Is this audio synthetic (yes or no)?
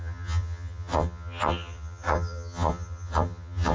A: yes